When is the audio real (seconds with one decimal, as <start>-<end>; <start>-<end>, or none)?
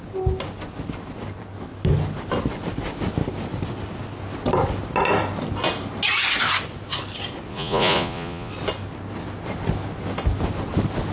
0.0-7.5; 8.5-11.1